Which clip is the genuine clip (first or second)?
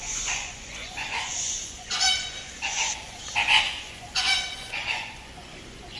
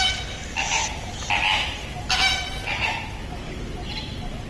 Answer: second